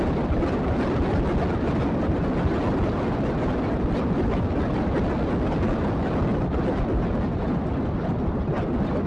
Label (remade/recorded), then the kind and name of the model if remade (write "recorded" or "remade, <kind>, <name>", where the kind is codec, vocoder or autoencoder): recorded